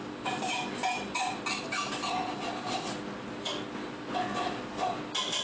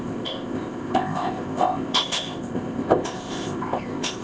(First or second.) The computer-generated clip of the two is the second